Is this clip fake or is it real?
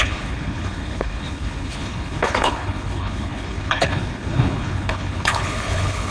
fake